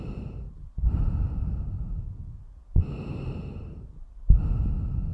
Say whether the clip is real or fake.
real